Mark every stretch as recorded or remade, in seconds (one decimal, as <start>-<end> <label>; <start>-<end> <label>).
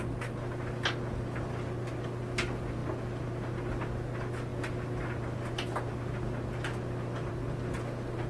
0.0-8.3 recorded